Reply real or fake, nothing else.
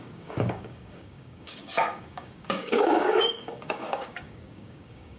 fake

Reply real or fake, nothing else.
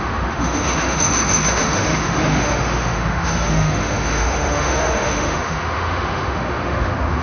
fake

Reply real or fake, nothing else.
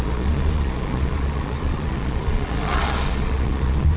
fake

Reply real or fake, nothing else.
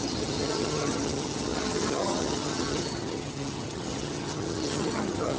fake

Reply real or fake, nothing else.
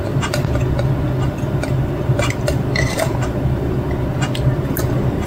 real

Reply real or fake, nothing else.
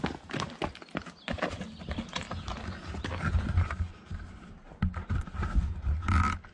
real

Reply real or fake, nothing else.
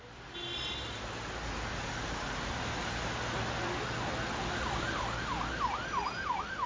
real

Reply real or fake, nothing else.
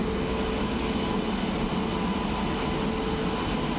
real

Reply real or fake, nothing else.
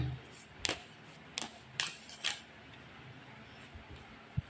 real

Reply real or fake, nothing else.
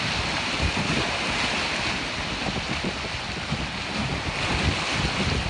real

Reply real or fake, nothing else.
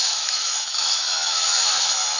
fake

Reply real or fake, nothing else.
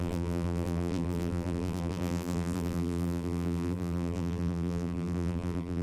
fake